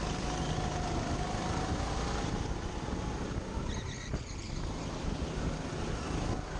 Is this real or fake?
real